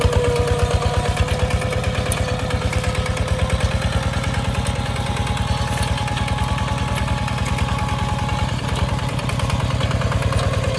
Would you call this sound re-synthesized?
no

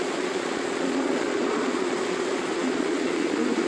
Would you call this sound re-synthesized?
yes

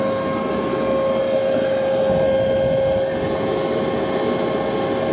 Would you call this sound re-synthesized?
no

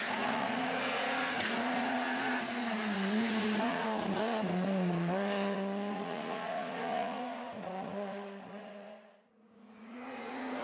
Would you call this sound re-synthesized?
yes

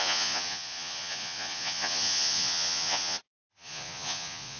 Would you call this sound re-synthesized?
yes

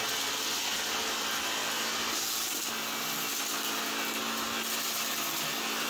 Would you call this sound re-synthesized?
no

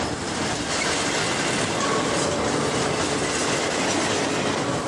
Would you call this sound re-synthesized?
no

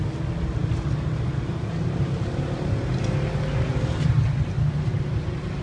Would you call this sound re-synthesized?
no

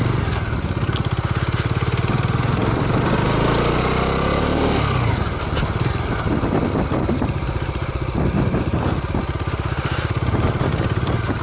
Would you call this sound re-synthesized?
no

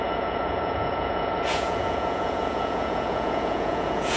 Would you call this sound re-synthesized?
yes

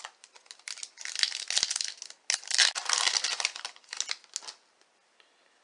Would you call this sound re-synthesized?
no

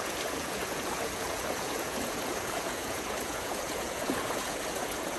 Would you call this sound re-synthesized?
yes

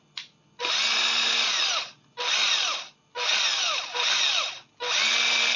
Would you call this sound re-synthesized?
no